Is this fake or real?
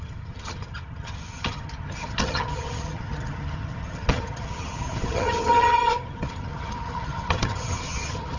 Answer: fake